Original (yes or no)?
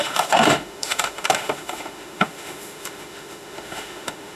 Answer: no